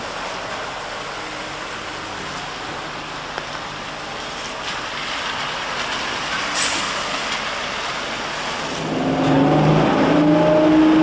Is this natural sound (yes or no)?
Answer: yes